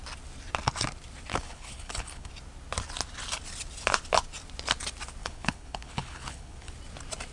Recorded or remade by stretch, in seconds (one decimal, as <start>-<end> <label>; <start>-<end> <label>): 0.0-1.3 recorded; 1.3-2.3 remade; 2.3-5.2 recorded; 5.2-6.7 remade; 6.7-7.3 recorded

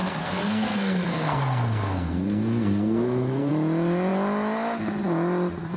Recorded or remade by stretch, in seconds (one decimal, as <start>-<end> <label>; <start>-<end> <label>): 0.0-3.5 remade; 3.5-5.8 recorded

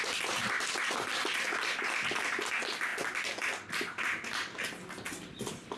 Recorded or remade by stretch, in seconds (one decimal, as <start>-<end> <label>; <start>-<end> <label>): 0.0-5.8 recorded